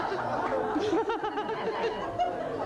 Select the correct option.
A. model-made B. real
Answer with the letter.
B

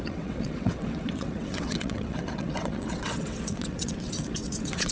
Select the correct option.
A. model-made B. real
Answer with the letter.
A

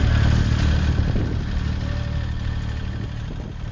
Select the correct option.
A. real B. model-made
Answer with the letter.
A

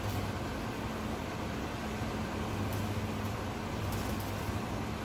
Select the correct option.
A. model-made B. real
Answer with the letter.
B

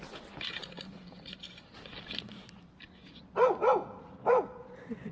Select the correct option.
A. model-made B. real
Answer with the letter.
B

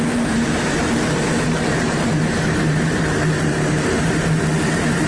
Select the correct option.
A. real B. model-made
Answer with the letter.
B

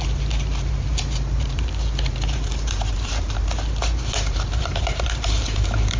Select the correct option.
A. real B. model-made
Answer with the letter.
B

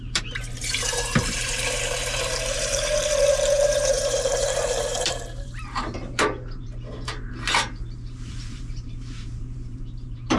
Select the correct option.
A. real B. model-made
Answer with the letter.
B